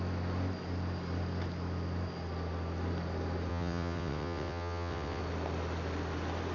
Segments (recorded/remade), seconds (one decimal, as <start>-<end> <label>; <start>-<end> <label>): 0.0-3.5 recorded; 3.5-5.2 remade; 5.2-6.5 recorded